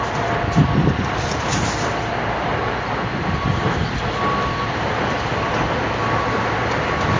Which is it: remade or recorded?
recorded